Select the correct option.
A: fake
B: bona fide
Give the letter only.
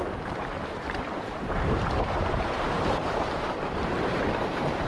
A